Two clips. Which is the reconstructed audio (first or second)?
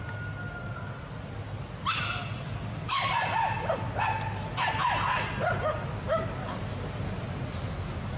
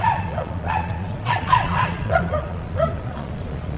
second